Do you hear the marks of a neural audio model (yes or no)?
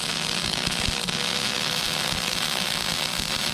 no